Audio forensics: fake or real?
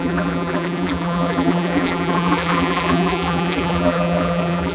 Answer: fake